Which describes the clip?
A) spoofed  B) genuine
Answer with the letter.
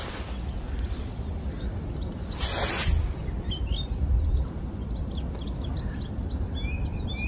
B